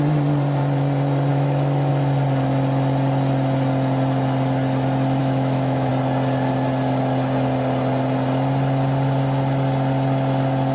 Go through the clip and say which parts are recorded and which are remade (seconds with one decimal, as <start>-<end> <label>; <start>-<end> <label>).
0.0-1.3 recorded; 1.3-1.9 remade; 1.9-5.2 recorded; 5.2-5.9 remade; 5.9-10.7 recorded